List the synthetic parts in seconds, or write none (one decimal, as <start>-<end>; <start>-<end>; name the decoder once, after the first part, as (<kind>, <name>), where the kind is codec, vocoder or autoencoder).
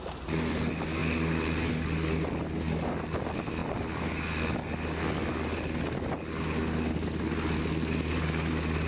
none